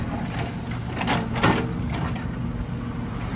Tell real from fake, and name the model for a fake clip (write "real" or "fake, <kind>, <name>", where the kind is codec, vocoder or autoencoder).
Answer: real